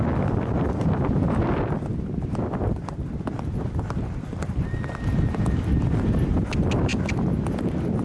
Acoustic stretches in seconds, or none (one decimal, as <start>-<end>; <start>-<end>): 0.0-8.0